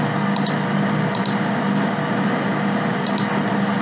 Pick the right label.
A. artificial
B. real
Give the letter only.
B